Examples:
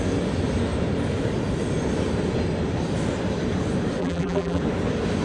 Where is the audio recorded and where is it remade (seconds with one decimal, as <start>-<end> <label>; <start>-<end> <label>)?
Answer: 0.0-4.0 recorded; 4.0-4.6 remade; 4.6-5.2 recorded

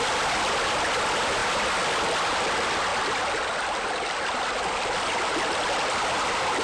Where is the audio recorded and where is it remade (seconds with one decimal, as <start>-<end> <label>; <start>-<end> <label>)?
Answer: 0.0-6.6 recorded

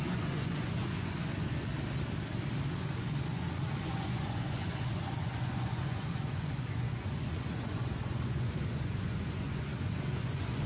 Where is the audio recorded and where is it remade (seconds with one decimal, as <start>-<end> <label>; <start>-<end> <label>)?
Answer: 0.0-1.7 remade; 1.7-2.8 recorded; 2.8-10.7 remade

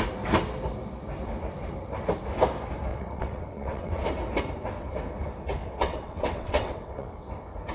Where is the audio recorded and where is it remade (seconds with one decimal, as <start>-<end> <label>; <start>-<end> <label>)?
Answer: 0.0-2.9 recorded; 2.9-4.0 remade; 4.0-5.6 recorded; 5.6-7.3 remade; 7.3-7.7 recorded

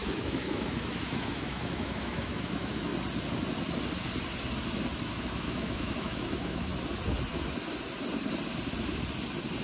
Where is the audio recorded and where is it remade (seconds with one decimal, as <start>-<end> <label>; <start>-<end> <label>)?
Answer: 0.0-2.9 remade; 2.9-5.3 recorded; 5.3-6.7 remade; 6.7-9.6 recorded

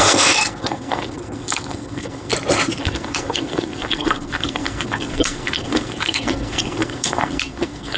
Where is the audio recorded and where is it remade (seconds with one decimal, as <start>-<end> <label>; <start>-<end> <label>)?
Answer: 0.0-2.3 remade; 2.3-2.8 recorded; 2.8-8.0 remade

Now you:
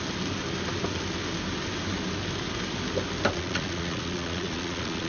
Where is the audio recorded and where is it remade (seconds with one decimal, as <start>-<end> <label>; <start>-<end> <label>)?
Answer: 0.0-3.3 recorded; 3.3-5.1 remade